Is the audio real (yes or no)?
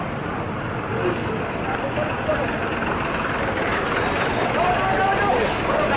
yes